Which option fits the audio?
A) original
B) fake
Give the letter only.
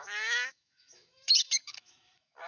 B